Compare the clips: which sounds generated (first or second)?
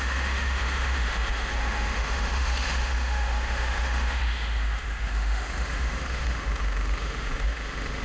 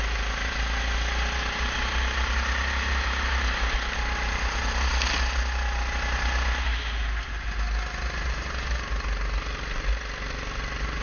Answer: first